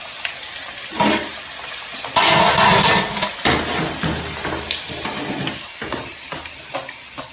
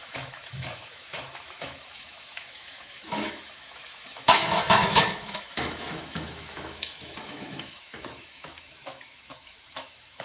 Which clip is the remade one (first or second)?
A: second